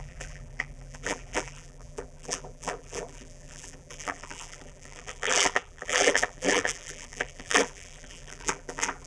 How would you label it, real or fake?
fake